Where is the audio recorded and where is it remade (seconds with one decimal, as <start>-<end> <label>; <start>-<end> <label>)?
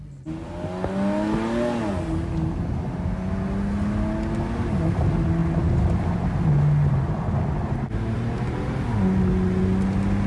0.0-10.3 recorded